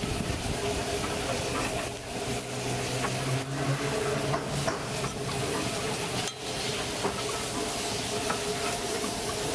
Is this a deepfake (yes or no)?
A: no